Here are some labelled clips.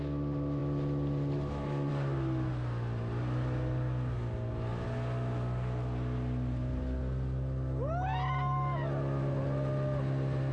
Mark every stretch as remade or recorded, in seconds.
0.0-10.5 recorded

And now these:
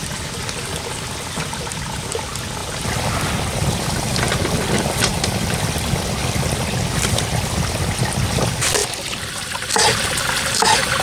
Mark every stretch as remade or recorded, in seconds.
0.0-11.0 recorded

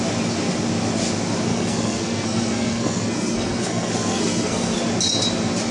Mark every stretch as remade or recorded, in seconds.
0.0-1.5 recorded; 1.5-4.8 remade; 4.8-5.7 recorded

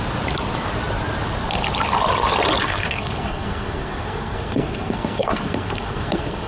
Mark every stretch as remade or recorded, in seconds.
0.0-2.6 recorded; 2.6-6.5 remade